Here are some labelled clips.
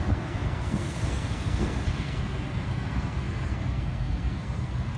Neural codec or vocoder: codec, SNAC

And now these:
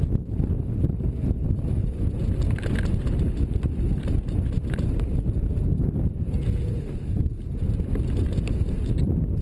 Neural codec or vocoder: none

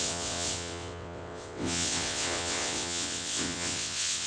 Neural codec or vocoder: vocoder, WaveNeXt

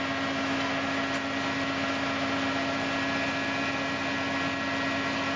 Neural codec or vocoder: none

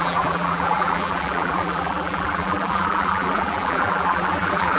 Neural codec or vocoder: vocoder, BigVGAN v2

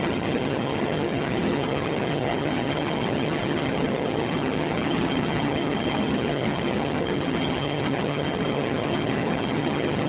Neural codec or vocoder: vocoder, HiFi-GAN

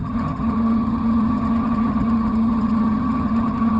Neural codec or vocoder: vocoder, HiFi-GAN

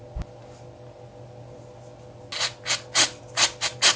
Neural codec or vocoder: none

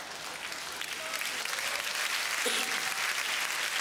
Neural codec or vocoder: none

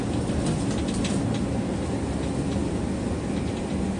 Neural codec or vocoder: none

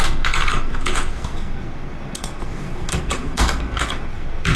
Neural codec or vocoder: codec, SNAC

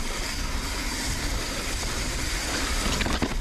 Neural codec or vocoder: vocoder, BigVGAN v2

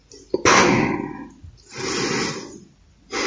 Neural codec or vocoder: none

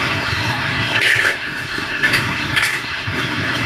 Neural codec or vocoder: codec, SNAC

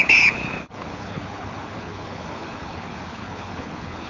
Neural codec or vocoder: codec, HILCodec